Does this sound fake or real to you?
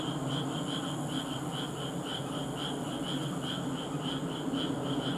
fake